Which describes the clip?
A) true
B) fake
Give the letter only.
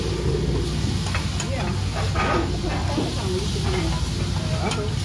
A